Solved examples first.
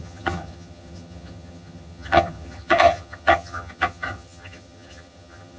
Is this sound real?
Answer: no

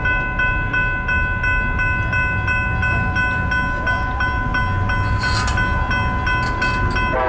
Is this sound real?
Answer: yes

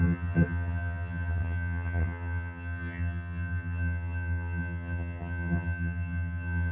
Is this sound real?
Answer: no